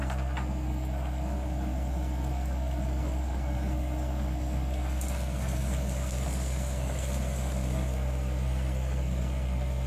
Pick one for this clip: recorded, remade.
remade